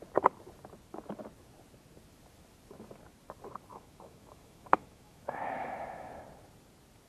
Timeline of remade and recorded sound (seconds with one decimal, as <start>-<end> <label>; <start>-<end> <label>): 0.0-3.7 recorded; 3.7-6.1 remade; 6.1-7.1 recorded